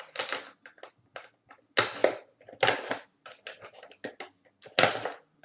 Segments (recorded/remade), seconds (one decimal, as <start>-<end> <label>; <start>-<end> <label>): 0.0-5.4 recorded